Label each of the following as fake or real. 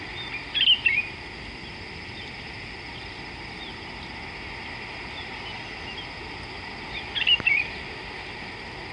real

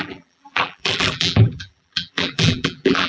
fake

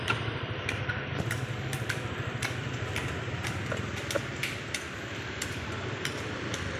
fake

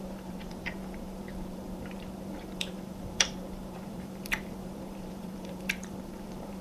fake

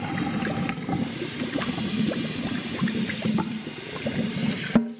real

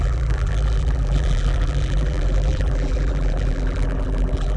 fake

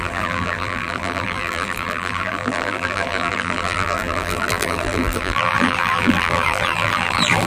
fake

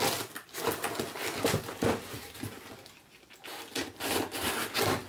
real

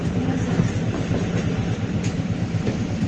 fake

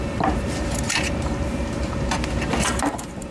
fake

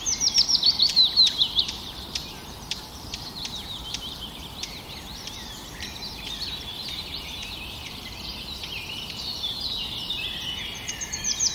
fake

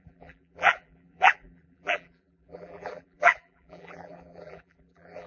fake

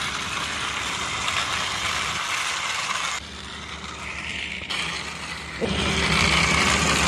fake